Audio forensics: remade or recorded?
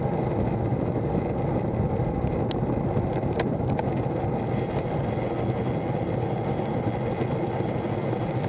recorded